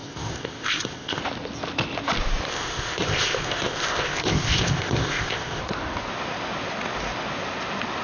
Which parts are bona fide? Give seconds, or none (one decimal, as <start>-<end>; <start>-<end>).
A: 1.2-2.5; 5.6-8.0